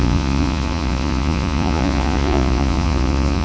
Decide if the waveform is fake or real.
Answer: fake